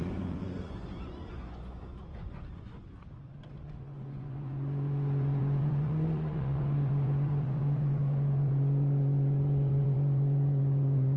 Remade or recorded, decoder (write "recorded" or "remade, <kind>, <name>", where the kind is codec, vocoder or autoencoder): remade, vocoder, Vocos